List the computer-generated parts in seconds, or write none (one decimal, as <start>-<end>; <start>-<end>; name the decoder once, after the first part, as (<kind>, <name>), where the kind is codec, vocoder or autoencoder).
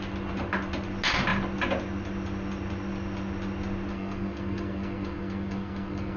3.9-6.2 (codec, SNAC)